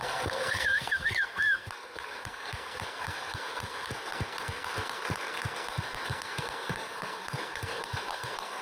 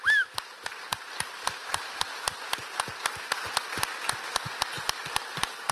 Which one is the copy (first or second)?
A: first